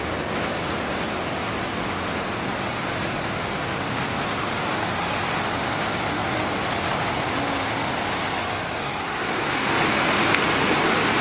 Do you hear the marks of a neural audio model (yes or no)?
no